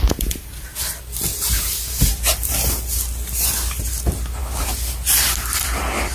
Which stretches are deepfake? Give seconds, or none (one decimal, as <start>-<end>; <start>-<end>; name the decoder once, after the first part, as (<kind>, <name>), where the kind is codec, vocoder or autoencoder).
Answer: 4.4-6.1 (vocoder, BigVGAN v2)